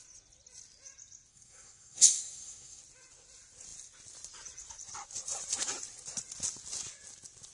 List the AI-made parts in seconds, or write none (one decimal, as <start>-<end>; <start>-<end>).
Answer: 1.3-2.8

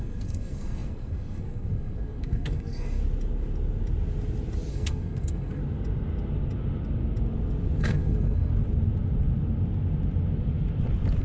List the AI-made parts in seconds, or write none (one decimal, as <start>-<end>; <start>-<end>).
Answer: 0.0-3.0; 4.7-5.6; 7.8-8.5